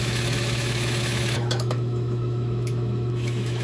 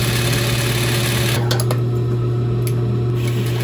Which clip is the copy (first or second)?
first